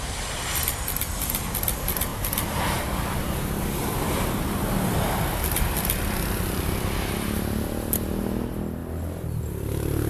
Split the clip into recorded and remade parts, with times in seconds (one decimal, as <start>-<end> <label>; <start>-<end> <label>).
0.0-10.1 recorded